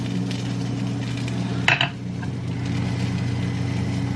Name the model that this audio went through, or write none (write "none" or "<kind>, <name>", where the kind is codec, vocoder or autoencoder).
none